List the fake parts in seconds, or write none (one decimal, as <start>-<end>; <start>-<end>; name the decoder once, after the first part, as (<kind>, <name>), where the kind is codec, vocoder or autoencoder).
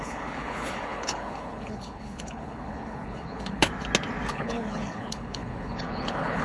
0.0-3.7 (codec, HILCodec); 4.3-6.4